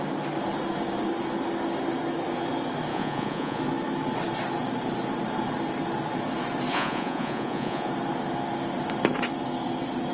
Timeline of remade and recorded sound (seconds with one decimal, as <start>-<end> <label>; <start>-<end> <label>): 0.0-2.9 recorded; 2.9-3.6 remade; 3.6-6.7 recorded; 6.7-7.9 remade; 7.9-10.1 recorded